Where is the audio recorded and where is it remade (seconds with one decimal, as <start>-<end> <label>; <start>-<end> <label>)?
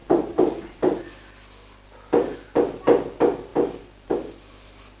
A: 0.0-1.0 remade; 1.0-5.0 recorded